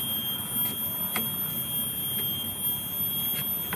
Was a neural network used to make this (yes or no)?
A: no